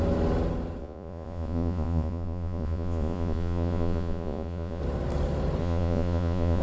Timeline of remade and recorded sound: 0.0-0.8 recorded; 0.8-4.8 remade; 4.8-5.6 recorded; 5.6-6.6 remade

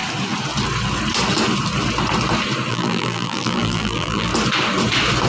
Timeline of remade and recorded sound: 0.0-2.7 recorded; 2.7-4.3 remade; 4.3-5.3 recorded